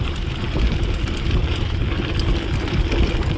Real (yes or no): no